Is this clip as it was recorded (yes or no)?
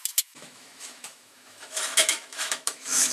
no